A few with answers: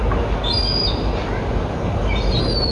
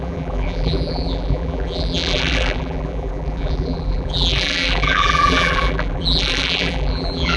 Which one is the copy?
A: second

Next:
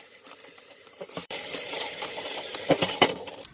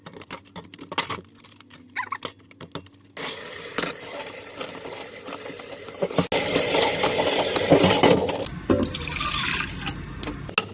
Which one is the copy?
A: first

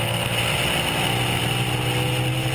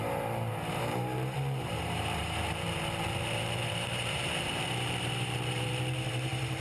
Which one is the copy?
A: second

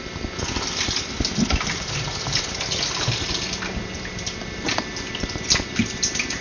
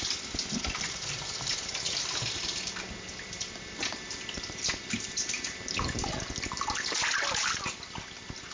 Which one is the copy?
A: second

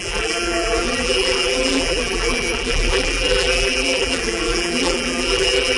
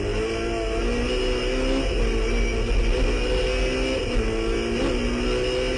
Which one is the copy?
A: first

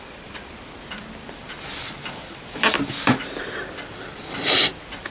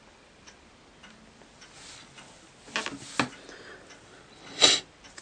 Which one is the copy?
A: first